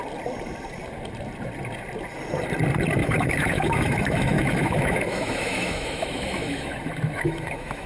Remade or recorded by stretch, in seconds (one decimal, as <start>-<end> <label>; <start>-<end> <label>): 0.0-3.0 recorded; 3.0-7.9 remade